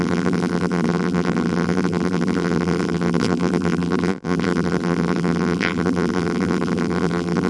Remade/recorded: remade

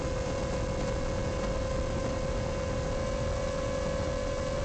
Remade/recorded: recorded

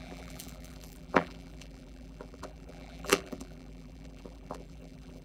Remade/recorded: remade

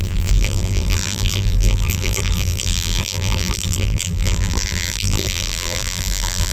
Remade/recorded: remade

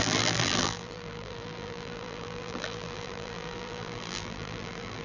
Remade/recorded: remade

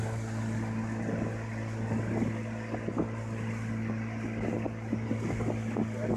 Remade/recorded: recorded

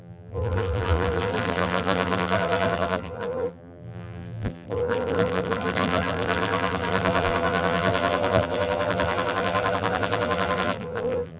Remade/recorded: remade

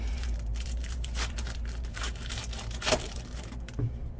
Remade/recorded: remade